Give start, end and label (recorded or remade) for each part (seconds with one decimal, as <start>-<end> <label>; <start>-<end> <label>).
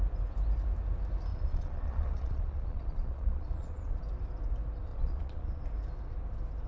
0.0-1.3 recorded; 1.3-4.0 remade; 4.0-4.9 recorded; 4.9-5.6 remade; 5.6-6.7 recorded